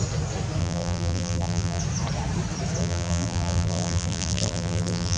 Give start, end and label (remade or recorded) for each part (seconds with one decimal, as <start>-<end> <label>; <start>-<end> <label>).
0.0-0.6 recorded; 0.6-1.8 remade; 1.8-2.8 recorded; 2.8-5.2 remade